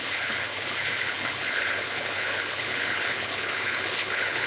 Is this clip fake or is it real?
fake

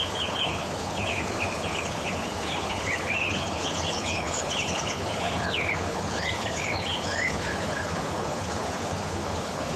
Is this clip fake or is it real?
fake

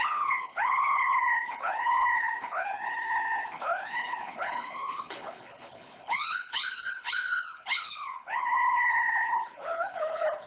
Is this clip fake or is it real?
fake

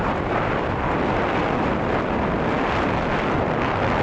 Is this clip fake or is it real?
real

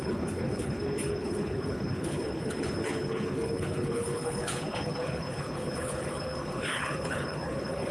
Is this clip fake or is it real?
fake